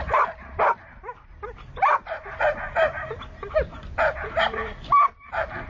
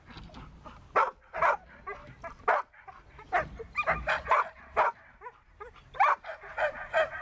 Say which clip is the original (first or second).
second